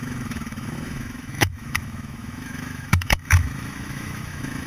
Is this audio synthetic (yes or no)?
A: yes